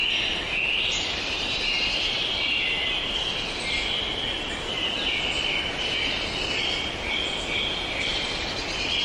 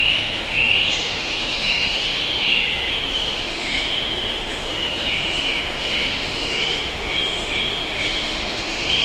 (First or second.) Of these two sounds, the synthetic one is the second